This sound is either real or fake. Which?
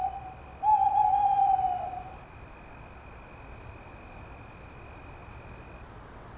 real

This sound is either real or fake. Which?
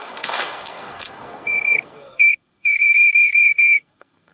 fake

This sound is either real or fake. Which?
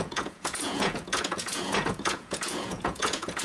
fake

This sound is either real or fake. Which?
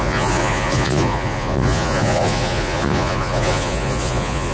fake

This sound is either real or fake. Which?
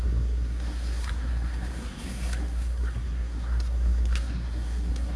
fake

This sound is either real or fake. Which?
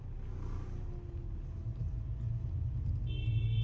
real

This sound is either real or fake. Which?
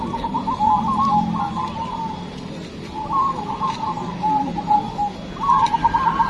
real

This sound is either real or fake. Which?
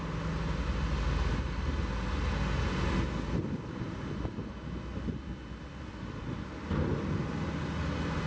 real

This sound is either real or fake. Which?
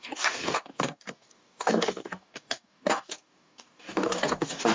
fake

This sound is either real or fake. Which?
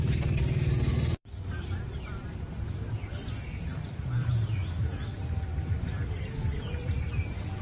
fake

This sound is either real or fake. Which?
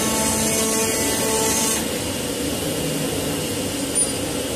real